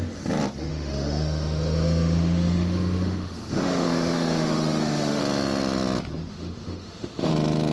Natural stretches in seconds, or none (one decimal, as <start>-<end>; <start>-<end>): 0.0-0.7; 5.2-6.3; 7.3-7.7

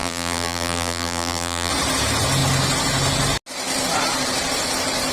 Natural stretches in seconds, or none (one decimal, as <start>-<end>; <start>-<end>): 1.7-5.1

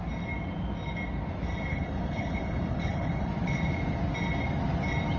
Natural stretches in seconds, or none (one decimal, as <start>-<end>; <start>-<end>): 0.0-1.7; 3.3-5.2

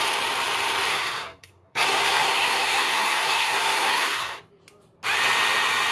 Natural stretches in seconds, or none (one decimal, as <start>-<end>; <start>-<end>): 0.0-0.9; 4.4-5.9

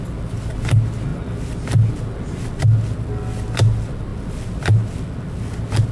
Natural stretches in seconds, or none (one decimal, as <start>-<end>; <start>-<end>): 0.0-5.9

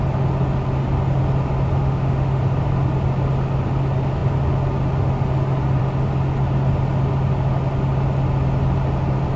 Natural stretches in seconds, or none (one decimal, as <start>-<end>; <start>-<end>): 0.0-1.8; 2.4-9.4